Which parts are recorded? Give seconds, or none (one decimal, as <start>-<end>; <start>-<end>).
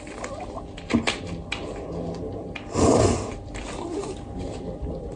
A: 0.0-2.4; 3.6-4.0